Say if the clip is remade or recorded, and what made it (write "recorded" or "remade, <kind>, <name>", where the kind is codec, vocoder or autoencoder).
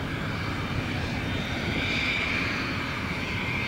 recorded